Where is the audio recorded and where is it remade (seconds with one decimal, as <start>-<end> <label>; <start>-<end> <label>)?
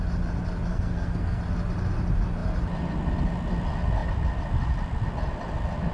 0.0-0.7 recorded; 0.7-1.4 remade; 1.4-5.9 recorded